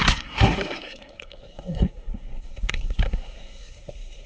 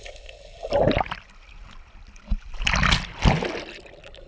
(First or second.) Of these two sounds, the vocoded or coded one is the first